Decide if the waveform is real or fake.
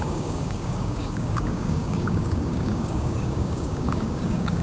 fake